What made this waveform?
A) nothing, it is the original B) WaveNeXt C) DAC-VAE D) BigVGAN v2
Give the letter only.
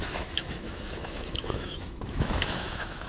C